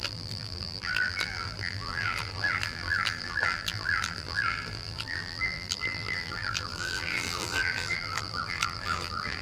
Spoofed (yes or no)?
yes